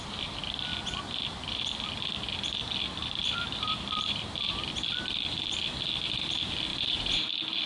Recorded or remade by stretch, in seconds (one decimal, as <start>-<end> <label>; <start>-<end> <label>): 0.0-3.2 recorded; 3.2-4.5 remade; 4.5-6.7 recorded; 6.7-7.3 remade; 7.3-7.7 recorded